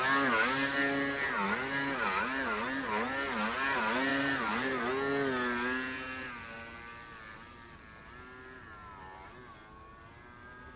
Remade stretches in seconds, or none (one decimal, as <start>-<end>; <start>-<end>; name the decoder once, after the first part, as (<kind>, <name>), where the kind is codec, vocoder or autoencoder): 4.1-4.8 (vocoder, BigVGAN v2)